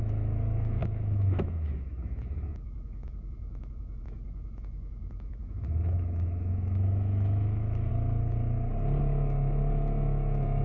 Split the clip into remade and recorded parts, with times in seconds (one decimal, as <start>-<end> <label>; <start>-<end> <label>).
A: 0.0-7.9 remade; 7.9-9.0 recorded; 9.0-10.6 remade

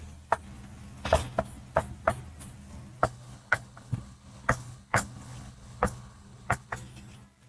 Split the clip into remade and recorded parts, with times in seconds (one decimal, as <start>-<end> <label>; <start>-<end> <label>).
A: 0.0-3.0 recorded; 3.0-6.7 remade; 6.7-7.5 recorded

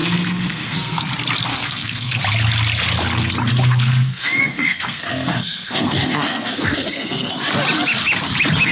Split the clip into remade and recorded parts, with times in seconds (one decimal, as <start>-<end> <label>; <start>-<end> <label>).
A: 0.0-1.0 remade; 1.0-1.5 recorded; 1.5-2.2 remade; 2.2-3.5 recorded; 3.5-7.3 remade; 7.3-8.7 recorded

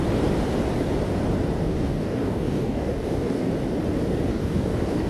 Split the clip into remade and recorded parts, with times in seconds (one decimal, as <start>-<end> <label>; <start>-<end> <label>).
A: 0.0-1.6 recorded; 1.6-3.5 remade; 3.5-4.3 recorded; 4.3-5.1 remade